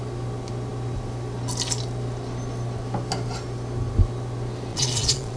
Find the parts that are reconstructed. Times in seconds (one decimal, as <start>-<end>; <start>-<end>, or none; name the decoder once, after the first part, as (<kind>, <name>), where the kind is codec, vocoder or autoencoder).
4.7-5.4 (vocoder, Vocos)